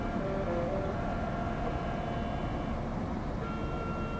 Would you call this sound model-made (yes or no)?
no